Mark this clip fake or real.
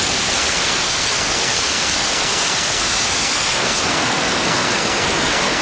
fake